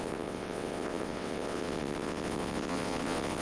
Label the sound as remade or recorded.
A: remade